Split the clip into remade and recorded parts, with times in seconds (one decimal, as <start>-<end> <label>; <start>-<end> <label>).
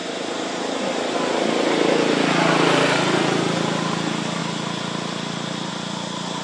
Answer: 0.0-1.5 remade; 1.5-6.4 recorded